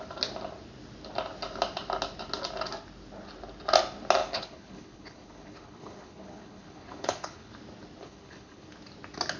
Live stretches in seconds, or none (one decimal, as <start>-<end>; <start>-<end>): 0.0-4.2; 7.5-8.0; 8.7-9.4

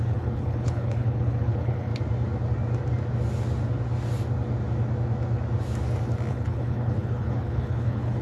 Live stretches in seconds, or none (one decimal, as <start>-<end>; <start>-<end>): 1.9-6.3

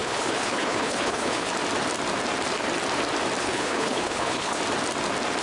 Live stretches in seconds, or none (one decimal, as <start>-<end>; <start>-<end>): 1.5-3.4; 4.6-5.4

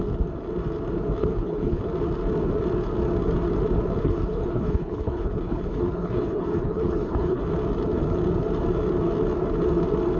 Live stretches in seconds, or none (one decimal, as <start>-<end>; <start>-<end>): 0.0-1.2; 1.8-4.0; 7.4-10.2

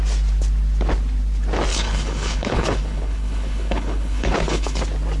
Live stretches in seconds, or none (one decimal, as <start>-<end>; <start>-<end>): 0.0-1.7; 4.8-5.2

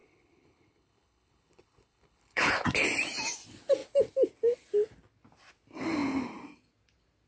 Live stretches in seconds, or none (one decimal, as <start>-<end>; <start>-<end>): 2.5-7.3

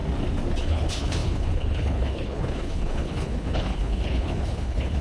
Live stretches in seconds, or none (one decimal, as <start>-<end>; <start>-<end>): 0.0-0.6